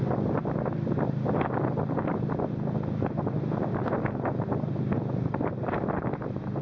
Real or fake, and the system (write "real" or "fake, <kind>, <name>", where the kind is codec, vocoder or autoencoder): fake, vocoder, BigVGAN v2